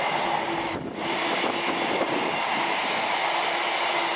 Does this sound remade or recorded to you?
recorded